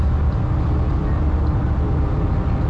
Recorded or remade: recorded